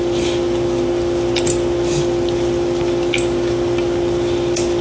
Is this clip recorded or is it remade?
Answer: recorded